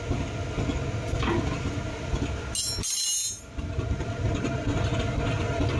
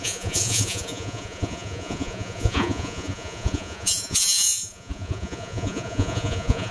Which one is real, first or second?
first